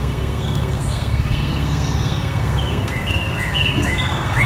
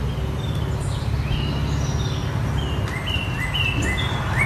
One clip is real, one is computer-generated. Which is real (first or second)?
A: second